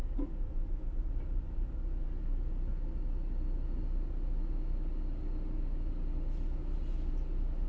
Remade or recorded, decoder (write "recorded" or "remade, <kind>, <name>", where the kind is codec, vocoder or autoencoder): recorded